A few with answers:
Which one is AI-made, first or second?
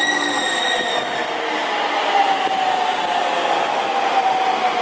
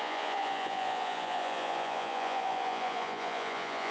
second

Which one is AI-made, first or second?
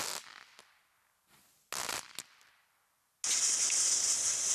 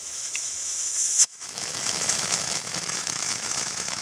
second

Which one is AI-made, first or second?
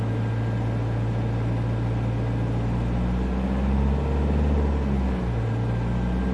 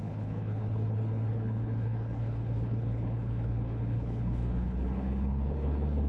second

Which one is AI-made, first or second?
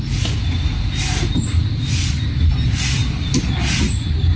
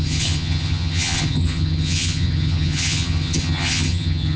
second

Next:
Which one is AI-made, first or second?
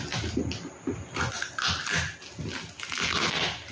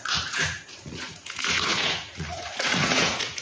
second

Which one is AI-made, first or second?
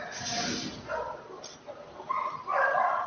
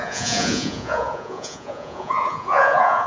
second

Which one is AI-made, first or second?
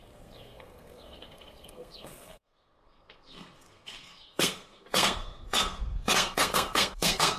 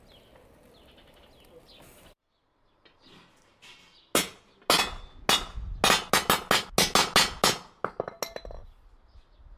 first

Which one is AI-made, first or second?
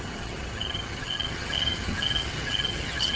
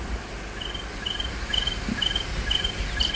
first